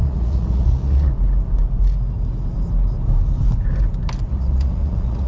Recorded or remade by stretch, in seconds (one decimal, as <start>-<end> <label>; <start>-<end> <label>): 0.0-1.1 remade; 1.1-4.3 recorded; 4.3-5.3 remade